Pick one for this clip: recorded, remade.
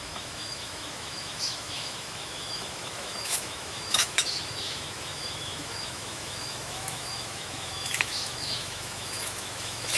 remade